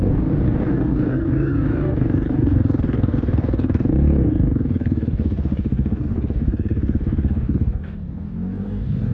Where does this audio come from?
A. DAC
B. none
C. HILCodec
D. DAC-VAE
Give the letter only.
A